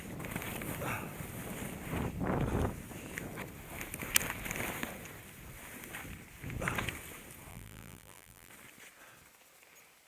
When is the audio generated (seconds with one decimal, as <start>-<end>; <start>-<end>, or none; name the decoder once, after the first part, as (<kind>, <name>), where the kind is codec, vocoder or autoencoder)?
7.5-8.5 (vocoder, BigVGAN v2)

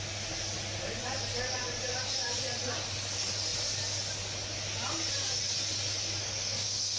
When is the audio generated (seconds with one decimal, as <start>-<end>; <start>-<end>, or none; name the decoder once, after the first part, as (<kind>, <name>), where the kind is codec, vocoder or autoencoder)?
6.2-7.0 (codec, SNAC)

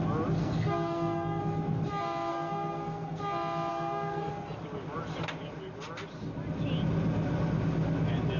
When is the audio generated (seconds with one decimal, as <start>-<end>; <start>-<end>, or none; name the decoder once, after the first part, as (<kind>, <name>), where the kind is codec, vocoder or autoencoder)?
0.4-1.4 (codec, SNAC); 2.3-3.2; 3.7-4.3

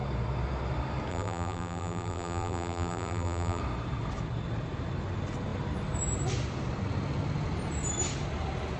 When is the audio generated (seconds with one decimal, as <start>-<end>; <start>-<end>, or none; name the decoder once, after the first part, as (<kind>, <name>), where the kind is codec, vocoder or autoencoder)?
1.1-3.6 (vocoder, BigVGAN v2)

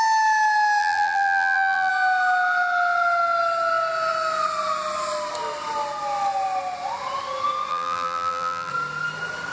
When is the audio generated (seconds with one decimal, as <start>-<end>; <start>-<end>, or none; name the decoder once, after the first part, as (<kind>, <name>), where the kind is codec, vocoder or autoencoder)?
0.8-1.9 (vocoder, BigVGAN v2); 7.7-8.7

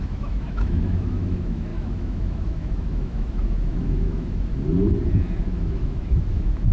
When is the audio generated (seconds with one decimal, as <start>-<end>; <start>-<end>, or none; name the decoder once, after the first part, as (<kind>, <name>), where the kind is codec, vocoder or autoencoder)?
0.0-4.5 (autoencoder, DAC-VAE); 5.4-6.7